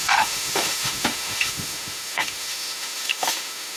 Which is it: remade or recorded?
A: remade